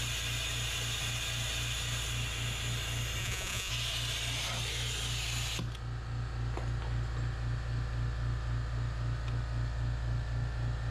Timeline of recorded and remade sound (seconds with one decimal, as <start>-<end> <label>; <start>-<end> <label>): 0.0-3.2 recorded; 3.2-3.7 remade; 3.7-10.9 recorded